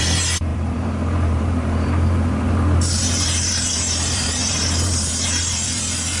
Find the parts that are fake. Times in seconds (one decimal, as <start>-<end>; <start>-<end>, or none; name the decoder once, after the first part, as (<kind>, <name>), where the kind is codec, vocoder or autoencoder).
0.0-6.2 (vocoder, BigVGAN v2)